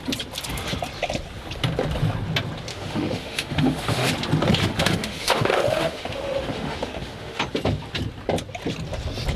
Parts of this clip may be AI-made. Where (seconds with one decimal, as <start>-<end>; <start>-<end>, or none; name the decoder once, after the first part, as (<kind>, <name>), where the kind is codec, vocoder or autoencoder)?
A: 2.7-4.1 (autoencoder, DAC-VAE); 4.6-7.4

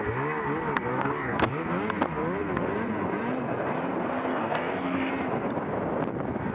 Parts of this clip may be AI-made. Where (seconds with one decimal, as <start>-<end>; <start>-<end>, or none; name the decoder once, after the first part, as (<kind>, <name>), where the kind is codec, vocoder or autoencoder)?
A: 0.9-1.5 (codec, DAC); 4.3-5.1

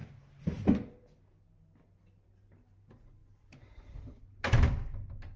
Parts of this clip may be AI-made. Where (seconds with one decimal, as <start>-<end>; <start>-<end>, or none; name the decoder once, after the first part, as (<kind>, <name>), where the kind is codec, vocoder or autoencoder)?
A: 3.2-4.2 (vocoder, BigVGAN v2)

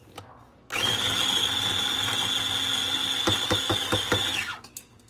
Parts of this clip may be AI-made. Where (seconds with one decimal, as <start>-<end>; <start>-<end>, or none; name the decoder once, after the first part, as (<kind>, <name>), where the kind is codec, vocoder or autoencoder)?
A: 0.0-1.4 (codec, DAC); 3.7-5.1

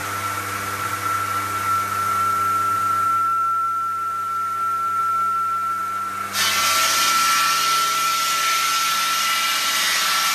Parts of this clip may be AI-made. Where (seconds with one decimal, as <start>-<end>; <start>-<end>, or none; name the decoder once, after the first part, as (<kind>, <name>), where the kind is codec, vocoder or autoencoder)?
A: none

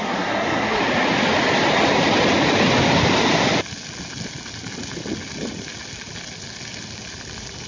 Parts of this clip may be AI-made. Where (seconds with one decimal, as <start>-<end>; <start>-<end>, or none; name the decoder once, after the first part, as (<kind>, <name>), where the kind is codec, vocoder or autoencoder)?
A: 0.0-0.8 (codec, SNAC)

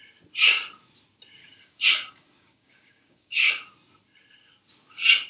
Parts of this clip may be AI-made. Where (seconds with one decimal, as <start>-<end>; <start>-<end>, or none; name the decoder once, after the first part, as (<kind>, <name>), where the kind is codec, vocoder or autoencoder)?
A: 1.4-3.5 (codec, DAC)